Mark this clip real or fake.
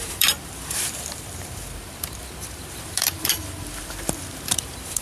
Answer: fake